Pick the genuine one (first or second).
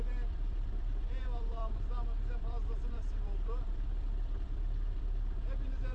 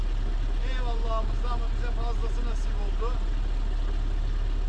second